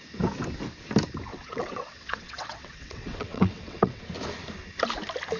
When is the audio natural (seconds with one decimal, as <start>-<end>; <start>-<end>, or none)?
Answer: 0.0-1.3; 4.0-5.4